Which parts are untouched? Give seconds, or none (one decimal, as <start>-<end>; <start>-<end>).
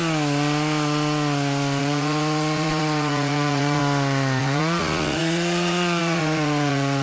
0.0-1.8; 3.8-4.4